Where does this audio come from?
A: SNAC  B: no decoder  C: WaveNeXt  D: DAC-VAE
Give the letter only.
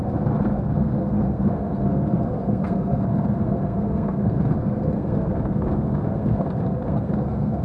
A